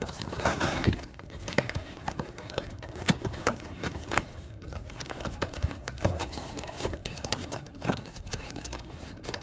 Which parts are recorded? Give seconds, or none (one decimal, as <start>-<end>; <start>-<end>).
none